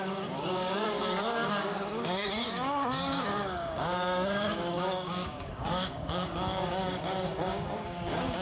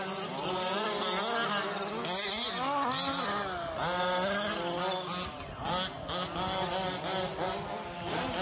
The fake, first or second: first